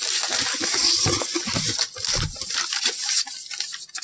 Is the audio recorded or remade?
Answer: recorded